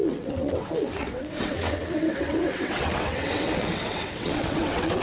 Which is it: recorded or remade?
remade